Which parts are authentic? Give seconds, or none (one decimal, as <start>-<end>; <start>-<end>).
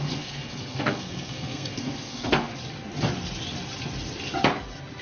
2.5-5.0